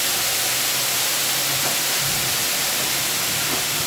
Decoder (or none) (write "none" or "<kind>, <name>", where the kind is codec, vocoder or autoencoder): none